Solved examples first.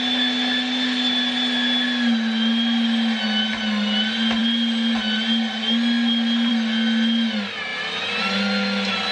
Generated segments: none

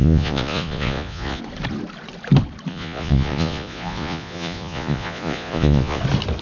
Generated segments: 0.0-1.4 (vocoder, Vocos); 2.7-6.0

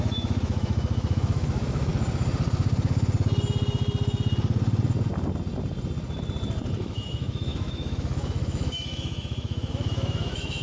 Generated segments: 0.0-1.9 (autoencoder, DAC-VAE); 6.8-10.6

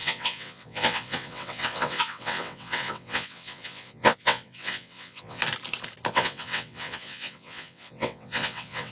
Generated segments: 0.0-5.4 (vocoder, WaveNeXt); 6.1-8.9

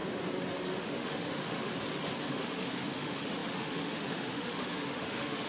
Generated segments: 0.6-1.7 (autoencoder, DAC-VAE); 2.3-5.5

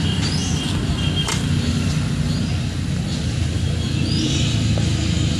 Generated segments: none